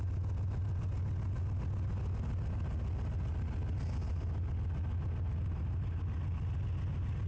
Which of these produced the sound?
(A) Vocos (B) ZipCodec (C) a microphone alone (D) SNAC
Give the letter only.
C